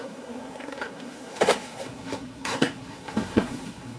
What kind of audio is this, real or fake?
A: fake